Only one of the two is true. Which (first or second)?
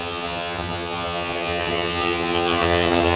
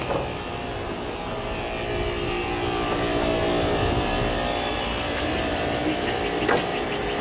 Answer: second